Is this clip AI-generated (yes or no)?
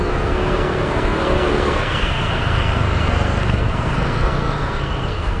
yes